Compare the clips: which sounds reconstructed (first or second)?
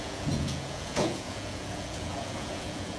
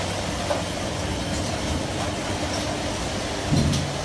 first